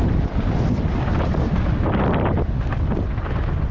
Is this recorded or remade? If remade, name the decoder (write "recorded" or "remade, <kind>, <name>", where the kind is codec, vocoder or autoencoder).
recorded